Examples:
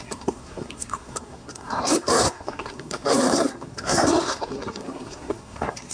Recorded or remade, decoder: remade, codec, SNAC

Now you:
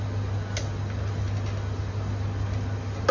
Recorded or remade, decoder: recorded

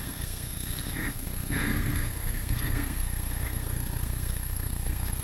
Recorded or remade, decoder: remade, codec, SNAC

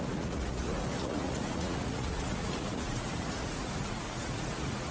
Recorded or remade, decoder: remade, vocoder, Vocos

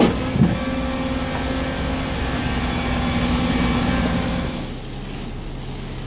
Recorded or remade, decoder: recorded